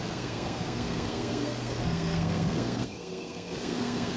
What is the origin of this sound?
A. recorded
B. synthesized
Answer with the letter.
B